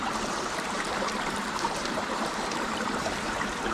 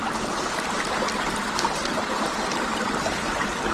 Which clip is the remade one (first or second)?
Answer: first